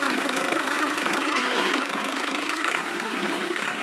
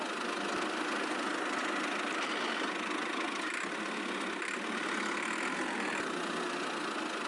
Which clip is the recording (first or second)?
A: second